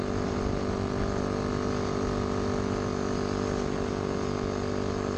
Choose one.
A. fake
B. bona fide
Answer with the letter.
B